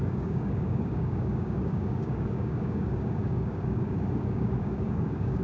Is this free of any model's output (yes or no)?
no